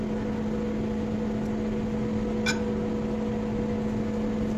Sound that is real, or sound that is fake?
real